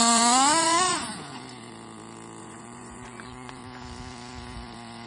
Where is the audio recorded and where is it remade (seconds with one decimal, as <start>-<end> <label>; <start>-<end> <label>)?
0.0-1.1 remade; 1.1-2.4 recorded; 2.4-3.6 remade; 3.6-5.1 recorded